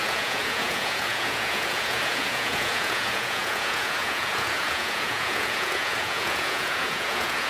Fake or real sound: fake